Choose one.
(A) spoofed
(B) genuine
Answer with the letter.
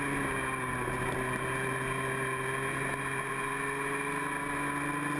B